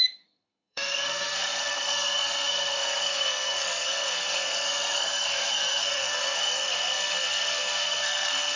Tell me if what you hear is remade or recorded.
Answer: remade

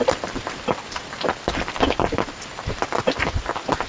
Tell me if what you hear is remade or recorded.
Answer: remade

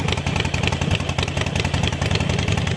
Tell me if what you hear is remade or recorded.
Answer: recorded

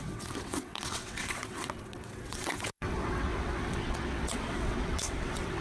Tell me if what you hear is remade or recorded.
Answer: remade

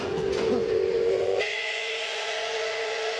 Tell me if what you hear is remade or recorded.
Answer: remade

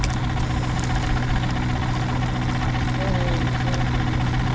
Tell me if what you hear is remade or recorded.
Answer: recorded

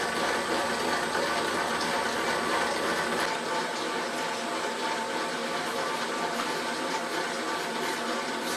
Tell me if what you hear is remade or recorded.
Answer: recorded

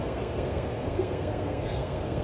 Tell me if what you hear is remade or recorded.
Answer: remade